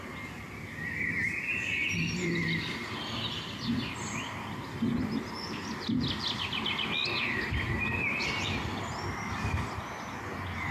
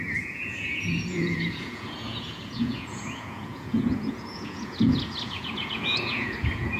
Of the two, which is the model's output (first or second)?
second